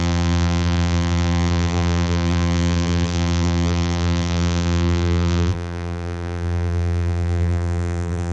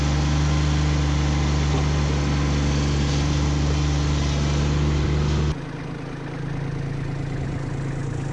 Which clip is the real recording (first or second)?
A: second